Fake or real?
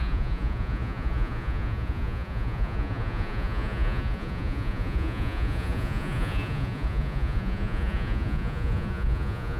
fake